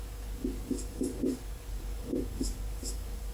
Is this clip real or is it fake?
fake